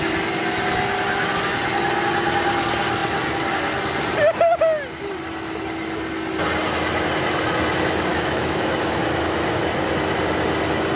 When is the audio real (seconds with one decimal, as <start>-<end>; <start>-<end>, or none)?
0.0-8.1; 9.0-11.0